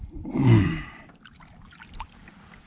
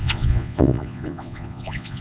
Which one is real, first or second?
first